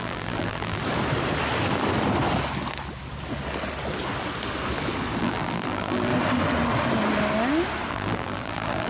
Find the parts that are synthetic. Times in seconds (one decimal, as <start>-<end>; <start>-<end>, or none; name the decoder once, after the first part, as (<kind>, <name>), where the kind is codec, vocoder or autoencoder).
0.0-0.8 (vocoder, BigVGAN v2); 5.2-6.1; 7.9-8.9